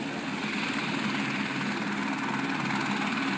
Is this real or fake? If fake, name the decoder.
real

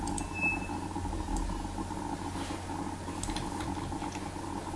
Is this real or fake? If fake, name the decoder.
real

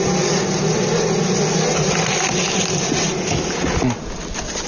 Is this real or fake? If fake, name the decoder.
real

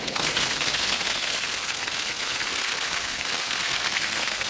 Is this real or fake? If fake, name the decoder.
fake, codec, SNAC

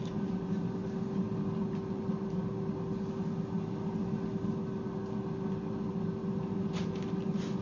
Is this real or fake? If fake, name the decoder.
real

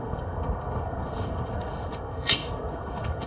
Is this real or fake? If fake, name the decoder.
fake, codec, SNAC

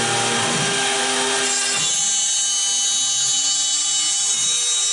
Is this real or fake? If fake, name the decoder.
real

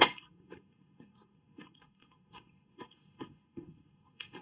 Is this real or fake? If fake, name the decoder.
fake, codec, SNAC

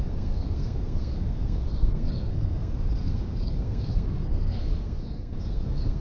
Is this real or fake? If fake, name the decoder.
fake, codec, SNAC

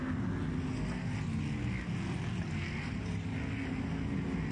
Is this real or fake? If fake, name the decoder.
real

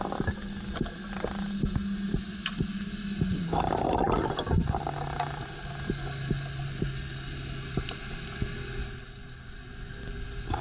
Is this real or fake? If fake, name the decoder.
real